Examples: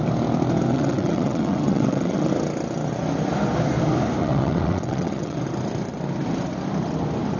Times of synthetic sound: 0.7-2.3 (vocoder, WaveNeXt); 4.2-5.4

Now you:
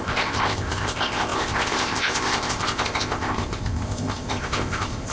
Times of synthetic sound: 0.0-5.1 (codec, ZipCodec)

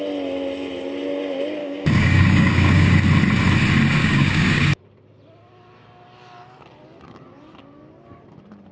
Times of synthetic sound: 1.6-2.9 (codec, DAC); 4.0-4.8

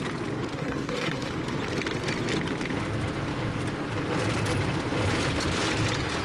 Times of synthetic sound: 0.5-1.3 (codec, SNAC)

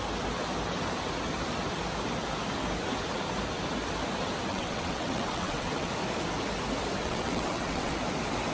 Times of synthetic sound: 4.5-5.9 (vocoder, WaveNeXt); 7.0-7.9

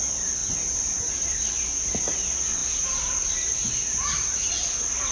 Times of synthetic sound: 0.4-1.1 (vocoder, BigVGAN v2); 2.6-4.5

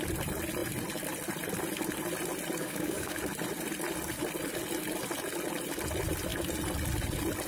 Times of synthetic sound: 2.6-3.2 (codec, DAC)

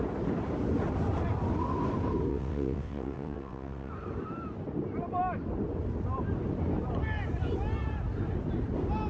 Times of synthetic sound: 2.3-3.9 (vocoder, WaveNeXt)